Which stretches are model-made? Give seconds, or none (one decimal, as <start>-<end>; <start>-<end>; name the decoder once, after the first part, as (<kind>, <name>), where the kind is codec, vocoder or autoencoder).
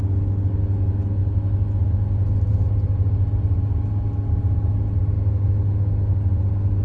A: none